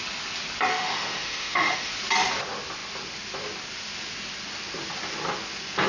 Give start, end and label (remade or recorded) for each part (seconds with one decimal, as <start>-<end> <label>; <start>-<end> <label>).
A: 0.0-0.7 recorded; 0.7-1.9 remade; 1.9-5.9 recorded